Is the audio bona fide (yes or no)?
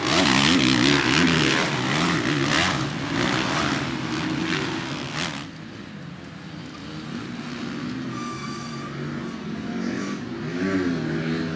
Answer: yes